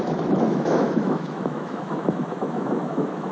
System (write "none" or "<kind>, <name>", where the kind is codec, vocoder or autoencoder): autoencoder, DAC-VAE